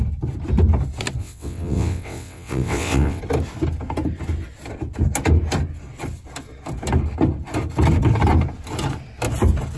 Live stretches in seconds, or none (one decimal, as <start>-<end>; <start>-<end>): 0.0-1.2; 3.2-9.8